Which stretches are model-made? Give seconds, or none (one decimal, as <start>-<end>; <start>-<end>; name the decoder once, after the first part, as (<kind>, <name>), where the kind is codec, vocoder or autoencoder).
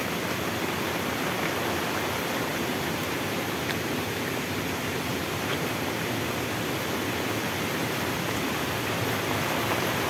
2.5-3.6 (vocoder, BigVGAN v2); 5.2-6.1